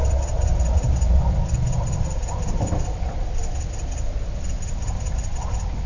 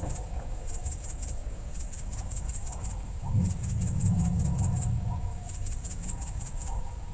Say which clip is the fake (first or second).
second